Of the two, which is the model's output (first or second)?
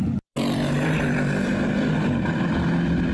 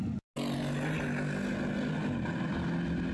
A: first